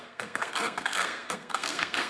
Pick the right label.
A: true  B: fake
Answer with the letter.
B